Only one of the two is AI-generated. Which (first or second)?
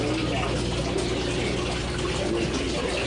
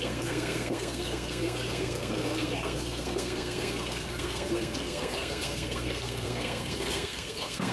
second